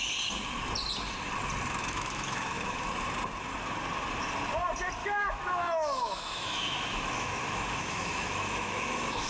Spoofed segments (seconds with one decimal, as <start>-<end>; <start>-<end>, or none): 1.8-2.9; 5.0-9.3